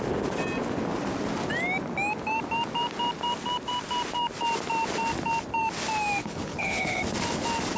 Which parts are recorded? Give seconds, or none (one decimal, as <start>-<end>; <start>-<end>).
0.0-6.2; 7.0-7.8

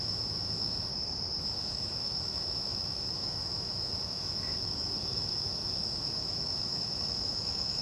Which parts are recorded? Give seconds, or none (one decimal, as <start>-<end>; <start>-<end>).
0.9-1.4

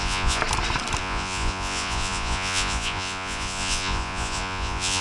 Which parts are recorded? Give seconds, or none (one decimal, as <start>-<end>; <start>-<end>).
0.4-1.0

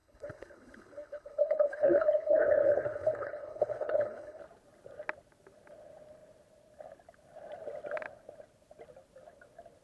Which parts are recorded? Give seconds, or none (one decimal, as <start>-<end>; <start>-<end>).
4.4-9.8

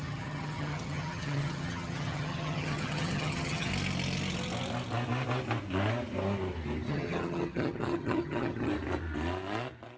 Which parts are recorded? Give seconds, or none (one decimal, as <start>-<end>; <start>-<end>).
3.7-6.9; 8.7-10.0

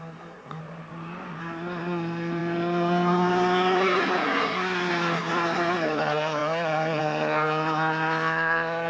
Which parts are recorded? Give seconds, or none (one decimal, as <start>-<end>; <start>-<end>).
0.6-1.4

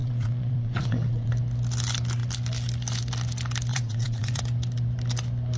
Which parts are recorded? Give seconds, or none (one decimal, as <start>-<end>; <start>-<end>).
1.3-3.7; 4.4-5.6

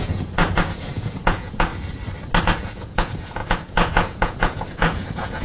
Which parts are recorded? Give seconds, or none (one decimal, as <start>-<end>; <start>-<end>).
1.7-2.4